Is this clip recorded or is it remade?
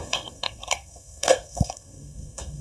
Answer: remade